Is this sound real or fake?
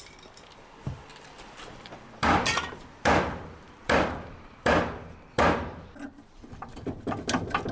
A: fake